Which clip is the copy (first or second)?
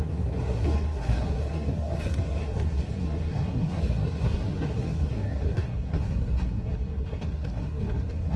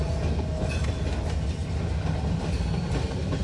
first